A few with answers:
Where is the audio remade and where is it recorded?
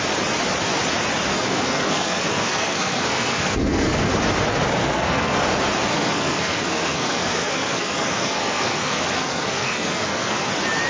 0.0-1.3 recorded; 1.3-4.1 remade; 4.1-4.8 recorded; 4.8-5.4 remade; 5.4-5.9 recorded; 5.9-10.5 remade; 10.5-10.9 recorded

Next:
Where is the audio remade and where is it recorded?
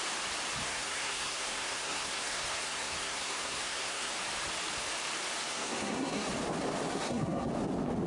0.0-0.6 recorded; 0.6-4.1 remade; 4.1-5.5 recorded; 5.5-6.3 remade; 6.3-6.9 recorded; 6.9-7.5 remade; 7.5-8.1 recorded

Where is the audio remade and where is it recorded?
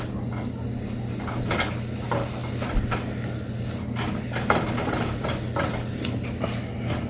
0.0-7.1 recorded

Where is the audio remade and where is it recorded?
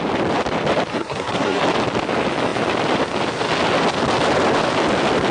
0.0-0.9 recorded; 0.9-1.6 remade; 1.6-5.3 recorded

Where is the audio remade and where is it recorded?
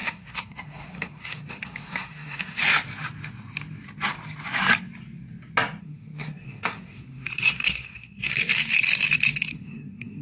0.0-2.6 remade; 2.6-5.8 recorded; 5.8-8.4 remade; 8.4-9.5 recorded; 9.5-10.2 remade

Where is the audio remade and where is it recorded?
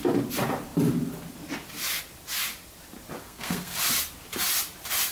0.0-3.2 recorded; 3.2-3.8 remade; 3.8-5.1 recorded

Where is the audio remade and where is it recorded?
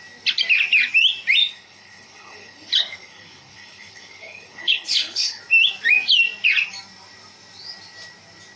0.0-1.4 recorded; 1.4-5.4 remade; 5.4-8.6 recorded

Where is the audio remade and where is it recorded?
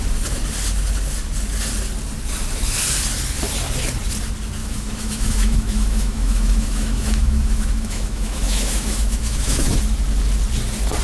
0.0-4.6 recorded; 4.6-9.8 remade; 9.8-11.0 recorded